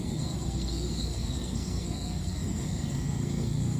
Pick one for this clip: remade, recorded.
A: remade